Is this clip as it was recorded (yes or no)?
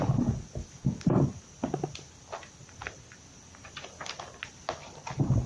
yes